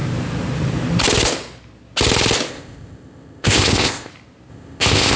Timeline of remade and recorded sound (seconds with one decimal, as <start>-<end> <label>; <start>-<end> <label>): 0.0-2.5 recorded; 2.5-4.1 remade; 4.1-4.5 recorded; 4.5-5.2 remade